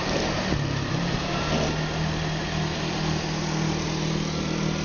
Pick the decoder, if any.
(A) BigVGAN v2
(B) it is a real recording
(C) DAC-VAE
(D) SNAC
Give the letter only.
B